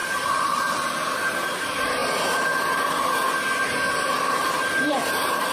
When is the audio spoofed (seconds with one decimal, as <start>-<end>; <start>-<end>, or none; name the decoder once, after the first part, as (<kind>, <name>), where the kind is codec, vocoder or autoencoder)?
0.0-2.0 (vocoder, BigVGAN v2); 4.9-5.5